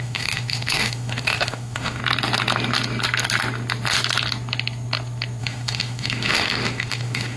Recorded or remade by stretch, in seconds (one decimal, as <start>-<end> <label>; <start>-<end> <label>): 0.0-2.0 remade; 2.0-5.4 recorded; 5.4-7.4 remade